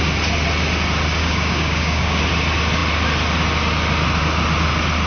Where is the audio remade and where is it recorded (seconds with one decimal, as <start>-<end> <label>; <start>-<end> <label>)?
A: 0.0-1.2 recorded; 1.2-2.2 remade; 2.2-5.1 recorded